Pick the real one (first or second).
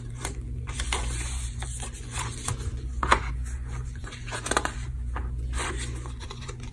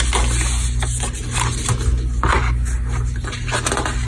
second